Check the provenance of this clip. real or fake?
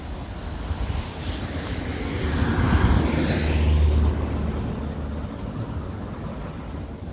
real